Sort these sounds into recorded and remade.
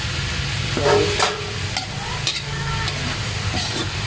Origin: recorded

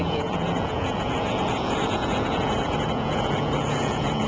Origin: remade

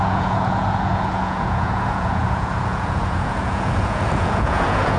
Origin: remade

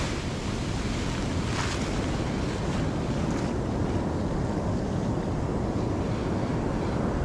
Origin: recorded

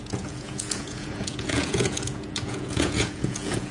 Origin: remade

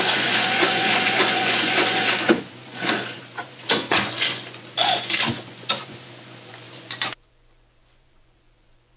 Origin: remade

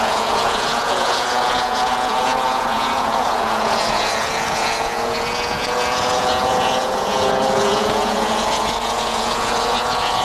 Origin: remade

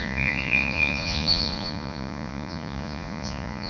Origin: remade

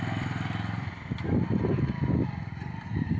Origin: recorded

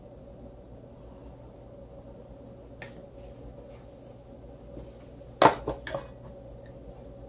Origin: recorded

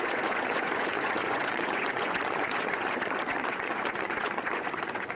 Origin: remade